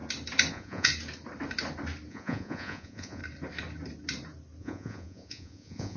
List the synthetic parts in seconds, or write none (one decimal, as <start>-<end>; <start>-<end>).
0.5-0.9; 2.1-3.2; 4.6-6.0